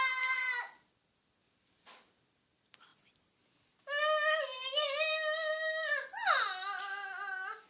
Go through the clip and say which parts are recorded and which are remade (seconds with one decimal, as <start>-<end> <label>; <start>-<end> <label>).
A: 0.0-0.5 remade; 0.5-1.2 recorded; 1.2-2.9 remade; 2.9-7.7 recorded